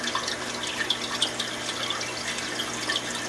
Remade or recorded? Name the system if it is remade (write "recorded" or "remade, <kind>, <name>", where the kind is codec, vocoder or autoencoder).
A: recorded